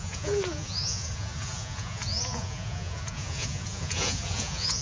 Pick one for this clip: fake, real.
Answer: fake